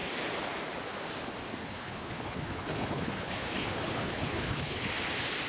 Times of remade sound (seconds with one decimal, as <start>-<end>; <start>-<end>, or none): 1.6-4.9